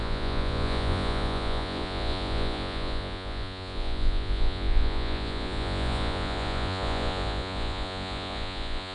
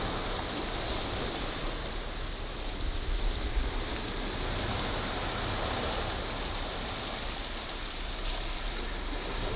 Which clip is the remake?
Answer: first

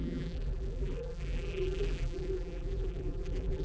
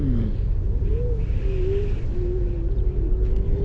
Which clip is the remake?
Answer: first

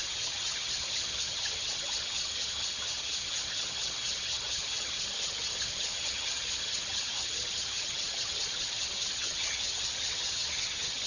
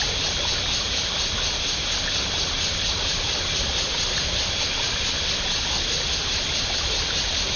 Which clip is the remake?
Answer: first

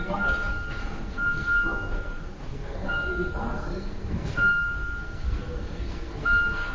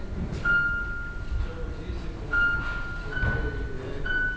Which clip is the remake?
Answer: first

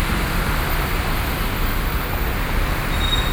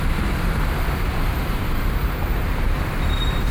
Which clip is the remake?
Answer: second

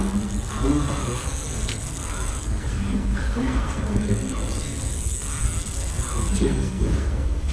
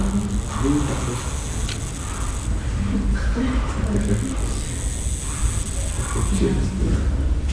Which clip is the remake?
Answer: first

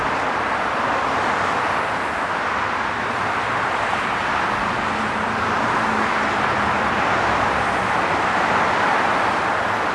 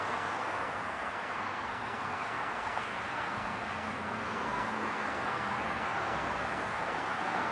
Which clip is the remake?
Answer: second